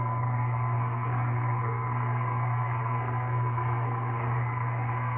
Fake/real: fake